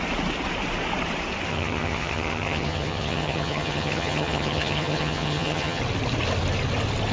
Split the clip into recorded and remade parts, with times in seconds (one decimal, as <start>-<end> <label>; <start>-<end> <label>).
0.0-1.5 recorded; 1.5-5.8 remade; 5.8-7.1 recorded